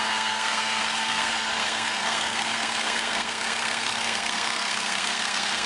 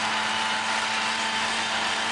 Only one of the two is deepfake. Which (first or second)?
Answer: first